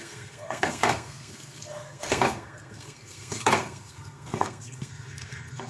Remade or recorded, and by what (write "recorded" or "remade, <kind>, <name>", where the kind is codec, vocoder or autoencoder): remade, codec, SNAC